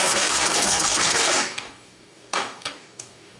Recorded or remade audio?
remade